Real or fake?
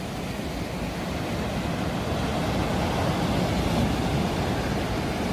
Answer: real